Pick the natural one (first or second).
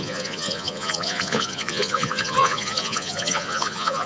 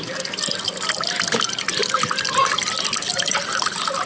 second